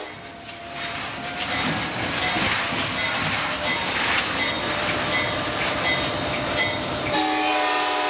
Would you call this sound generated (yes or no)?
no